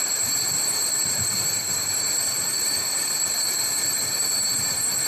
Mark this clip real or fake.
fake